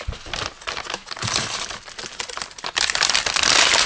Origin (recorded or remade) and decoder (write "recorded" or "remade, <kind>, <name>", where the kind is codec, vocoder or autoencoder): recorded